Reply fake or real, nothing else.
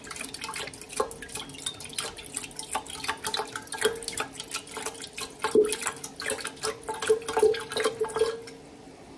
real